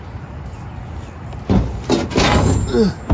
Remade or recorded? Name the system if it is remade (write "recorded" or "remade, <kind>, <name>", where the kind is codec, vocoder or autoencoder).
recorded